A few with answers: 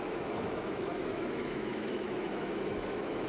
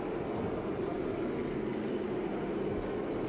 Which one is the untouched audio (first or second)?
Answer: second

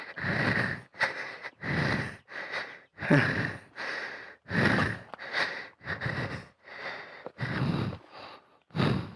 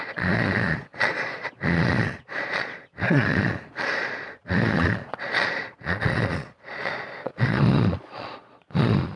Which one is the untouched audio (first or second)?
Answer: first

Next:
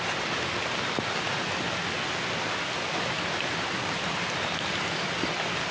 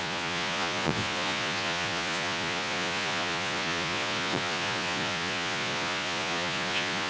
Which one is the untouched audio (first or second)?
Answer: first